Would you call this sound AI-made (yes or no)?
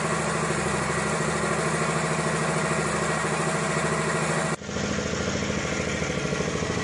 no